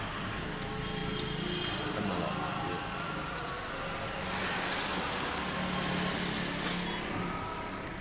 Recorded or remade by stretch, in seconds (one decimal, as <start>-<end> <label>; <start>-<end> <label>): 0.0-8.0 recorded